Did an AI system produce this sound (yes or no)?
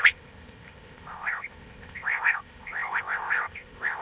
yes